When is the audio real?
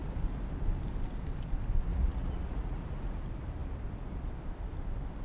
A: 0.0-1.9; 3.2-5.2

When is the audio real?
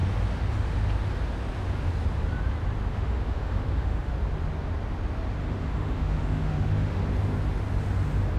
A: 0.0-2.9; 4.1-5.4; 7.0-8.4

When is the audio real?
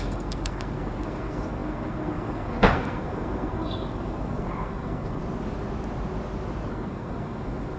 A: 5.2-6.7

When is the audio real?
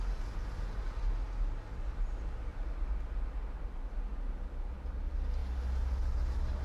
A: 0.0-6.6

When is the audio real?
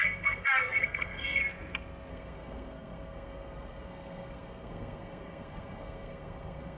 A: 1.4-2.1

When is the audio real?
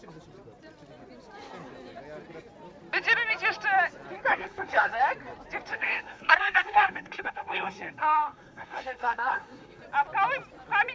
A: 0.0-4.3; 5.0-5.7; 9.8-10.9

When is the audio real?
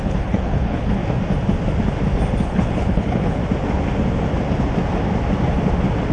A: 1.0-2.4; 3.4-6.1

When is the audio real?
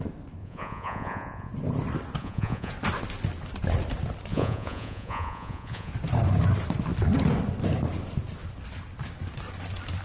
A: 0.0-0.4; 1.5-2.2; 2.7-4.3; 5.9-10.0